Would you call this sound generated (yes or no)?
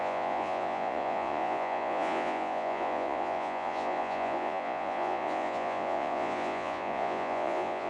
yes